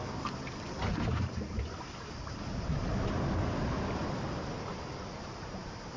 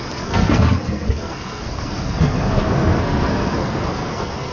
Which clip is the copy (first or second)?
second